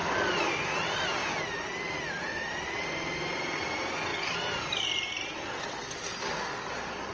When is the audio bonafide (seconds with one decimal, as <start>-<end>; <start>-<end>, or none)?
0.0-7.1